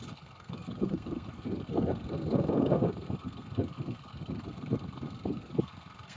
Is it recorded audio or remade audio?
remade